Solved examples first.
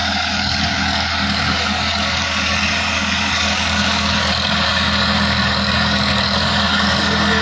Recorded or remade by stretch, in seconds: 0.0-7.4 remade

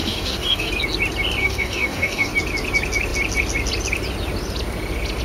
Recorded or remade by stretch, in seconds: 0.0-0.7 remade; 0.7-1.4 recorded; 1.4-2.3 remade; 2.3-5.2 recorded

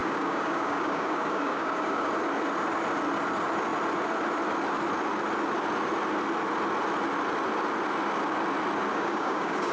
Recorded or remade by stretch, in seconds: 0.0-2.1 remade; 2.1-8.9 recorded; 8.9-9.7 remade